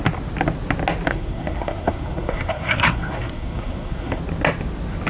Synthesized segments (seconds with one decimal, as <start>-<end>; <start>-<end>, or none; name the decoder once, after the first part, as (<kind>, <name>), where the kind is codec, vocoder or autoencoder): 1.1-4.2 (codec, SNAC)